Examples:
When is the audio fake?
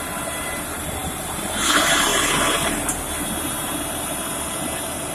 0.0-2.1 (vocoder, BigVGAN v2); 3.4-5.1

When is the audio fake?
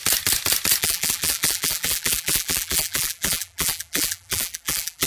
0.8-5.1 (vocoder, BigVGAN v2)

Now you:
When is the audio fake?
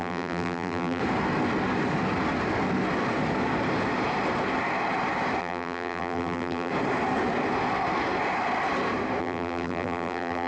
0.0-1.0 (vocoder, BigVGAN v2); 5.4-6.7; 9.2-10.5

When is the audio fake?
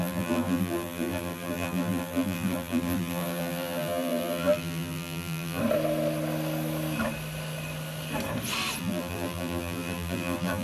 0.0-5.6 (vocoder, BigVGAN v2); 8.8-10.6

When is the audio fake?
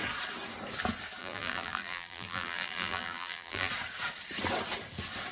1.2-3.7 (vocoder, BigVGAN v2)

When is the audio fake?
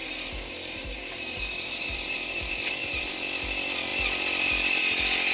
0.0-3.1 (vocoder, BigVGAN v2)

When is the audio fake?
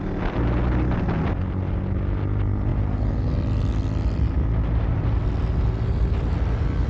4.4-4.9 (vocoder, BigVGAN v2)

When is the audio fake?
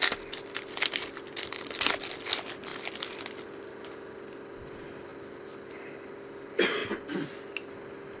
0.0-5.1 (vocoder, BigVGAN v2); 5.8-6.8